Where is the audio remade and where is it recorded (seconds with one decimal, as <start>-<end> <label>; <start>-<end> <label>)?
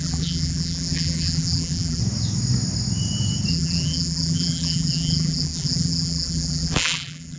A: 0.0-2.0 remade; 2.0-3.5 recorded; 3.5-7.4 remade